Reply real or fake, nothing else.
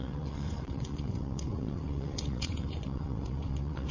fake